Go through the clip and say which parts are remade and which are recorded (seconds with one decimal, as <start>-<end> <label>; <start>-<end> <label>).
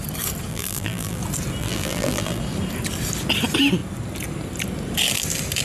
0.0-0.5 recorded; 0.5-1.2 remade; 1.2-1.6 recorded; 1.6-2.4 remade; 2.4-5.6 recorded